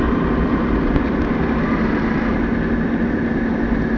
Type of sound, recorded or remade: recorded